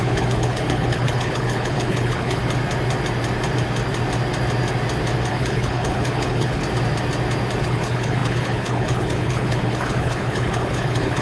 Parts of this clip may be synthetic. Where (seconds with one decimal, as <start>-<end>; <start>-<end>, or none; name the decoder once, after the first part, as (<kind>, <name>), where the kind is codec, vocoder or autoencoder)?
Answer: 0.0-2.4 (codec, HILCodec); 5.3-6.6; 7.6-11.2